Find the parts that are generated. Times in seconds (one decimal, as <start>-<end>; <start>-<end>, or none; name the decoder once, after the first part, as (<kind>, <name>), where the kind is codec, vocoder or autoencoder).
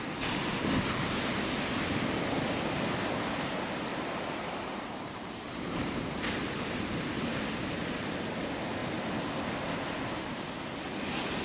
3.9-7.9 (vocoder, BigVGAN v2)